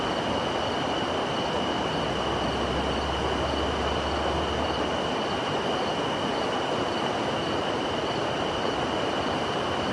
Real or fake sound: real